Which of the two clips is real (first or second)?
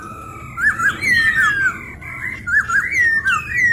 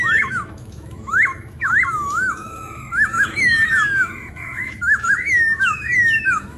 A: first